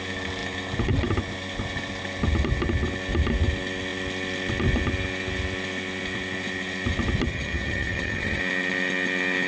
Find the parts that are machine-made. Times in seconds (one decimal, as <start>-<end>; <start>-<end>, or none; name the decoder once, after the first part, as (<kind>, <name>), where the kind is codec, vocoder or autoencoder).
7.3-8.4 (vocoder, HiFi-GAN)